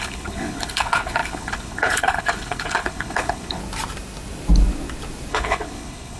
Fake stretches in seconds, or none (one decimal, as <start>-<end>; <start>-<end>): 0.0-3.6; 5.3-6.2